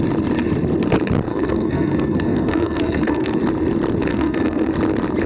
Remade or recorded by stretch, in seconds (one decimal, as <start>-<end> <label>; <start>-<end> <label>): 0.0-1.3 recorded; 1.3-3.4 remade; 3.4-4.1 recorded; 4.1-4.7 remade; 4.7-5.3 recorded